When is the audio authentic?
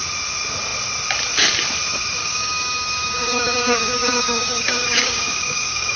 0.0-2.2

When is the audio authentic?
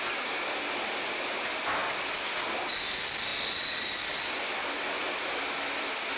0.0-6.2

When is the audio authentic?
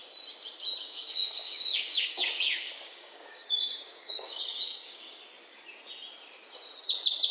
0.0-0.8; 5.2-7.3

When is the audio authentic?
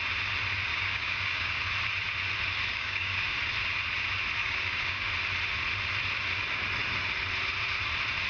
0.0-0.7; 1.6-2.7; 3.4-4.4; 5.1-8.3